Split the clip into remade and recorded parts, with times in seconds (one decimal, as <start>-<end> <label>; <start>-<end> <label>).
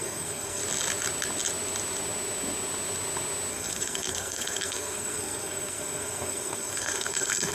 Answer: 0.0-0.6 remade; 0.6-3.5 recorded; 3.5-7.5 remade